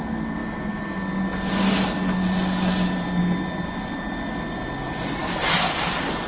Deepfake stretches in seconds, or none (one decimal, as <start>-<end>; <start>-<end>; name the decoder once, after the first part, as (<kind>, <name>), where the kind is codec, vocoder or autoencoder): none